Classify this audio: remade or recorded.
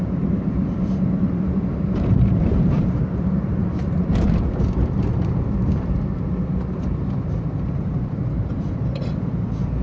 remade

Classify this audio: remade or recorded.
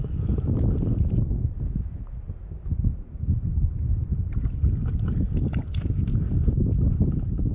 recorded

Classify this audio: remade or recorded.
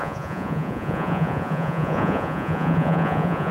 remade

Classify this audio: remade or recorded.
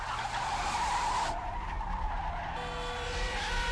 recorded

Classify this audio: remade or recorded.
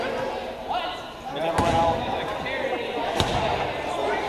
recorded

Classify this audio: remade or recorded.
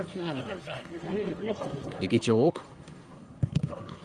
remade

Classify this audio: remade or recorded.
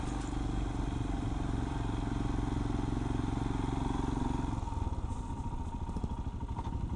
recorded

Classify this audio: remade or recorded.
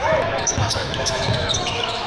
remade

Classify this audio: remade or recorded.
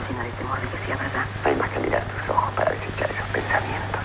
recorded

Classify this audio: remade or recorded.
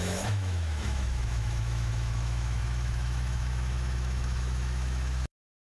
remade